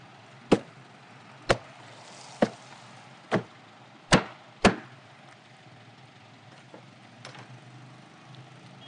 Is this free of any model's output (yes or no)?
yes